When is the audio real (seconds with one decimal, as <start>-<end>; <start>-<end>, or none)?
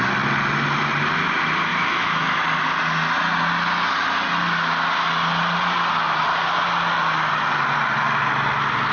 0.0-1.7; 2.4-8.9